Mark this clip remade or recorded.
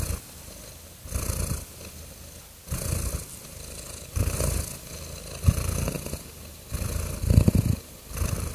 recorded